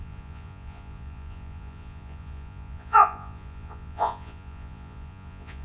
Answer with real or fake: fake